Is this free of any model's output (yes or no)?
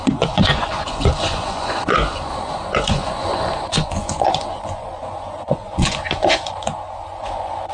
no